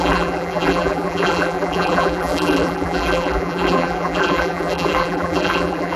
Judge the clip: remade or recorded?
remade